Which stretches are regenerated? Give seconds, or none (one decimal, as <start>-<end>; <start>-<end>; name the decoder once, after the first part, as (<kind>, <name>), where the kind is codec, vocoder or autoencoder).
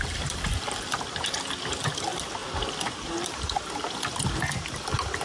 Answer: none